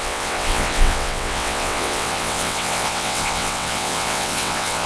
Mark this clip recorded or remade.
remade